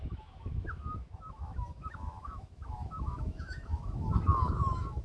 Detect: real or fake fake